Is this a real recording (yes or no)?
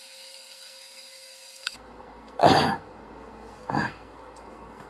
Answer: no